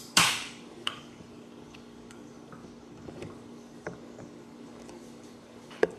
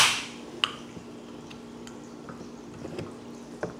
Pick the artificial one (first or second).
first